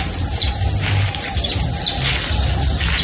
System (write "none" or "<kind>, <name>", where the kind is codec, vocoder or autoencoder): none